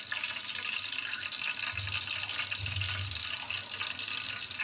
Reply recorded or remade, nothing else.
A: recorded